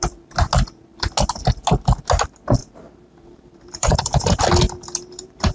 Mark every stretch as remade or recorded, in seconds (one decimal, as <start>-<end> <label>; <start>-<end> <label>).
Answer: 0.0-2.6 recorded; 2.6-4.4 remade; 4.4-5.5 recorded